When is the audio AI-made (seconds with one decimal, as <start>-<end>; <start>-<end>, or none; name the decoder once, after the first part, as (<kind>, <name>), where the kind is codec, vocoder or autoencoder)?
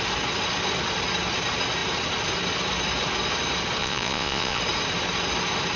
3.8-4.6 (vocoder, Vocos)